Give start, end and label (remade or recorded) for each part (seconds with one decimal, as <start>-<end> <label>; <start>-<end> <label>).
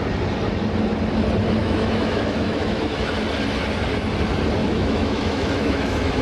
0.0-1.6 recorded; 1.6-3.1 remade; 3.1-4.6 recorded; 4.6-6.2 remade